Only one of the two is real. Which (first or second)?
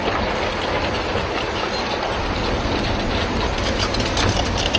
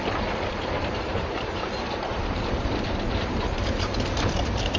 first